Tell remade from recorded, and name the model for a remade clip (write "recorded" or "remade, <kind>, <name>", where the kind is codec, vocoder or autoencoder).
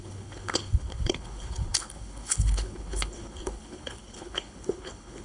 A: remade, codec, HILCodec